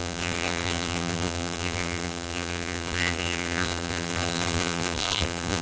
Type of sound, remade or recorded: remade